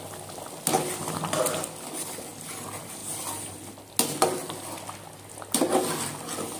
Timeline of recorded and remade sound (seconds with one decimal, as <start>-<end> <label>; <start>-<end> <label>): 0.0-6.6 recorded